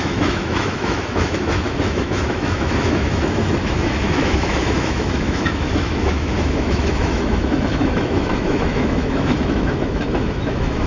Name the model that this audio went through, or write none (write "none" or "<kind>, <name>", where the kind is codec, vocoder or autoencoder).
autoencoder, DAC-VAE